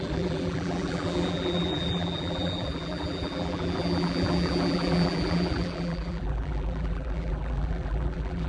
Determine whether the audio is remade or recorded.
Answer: remade